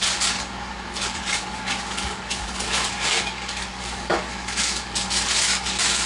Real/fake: fake